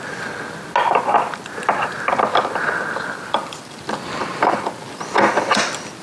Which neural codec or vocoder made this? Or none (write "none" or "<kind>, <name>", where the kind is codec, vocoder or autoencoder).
none